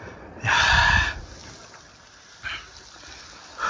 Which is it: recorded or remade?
recorded